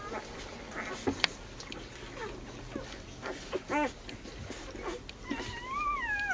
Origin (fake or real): real